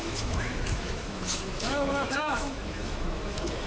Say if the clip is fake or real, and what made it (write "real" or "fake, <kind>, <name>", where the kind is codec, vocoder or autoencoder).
fake, autoencoder, DAC-VAE